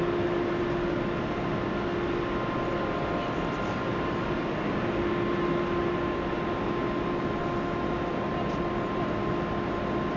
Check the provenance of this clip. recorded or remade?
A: recorded